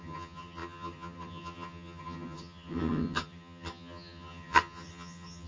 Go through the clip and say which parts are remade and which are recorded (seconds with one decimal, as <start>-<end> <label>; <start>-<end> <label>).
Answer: 0.0-5.5 remade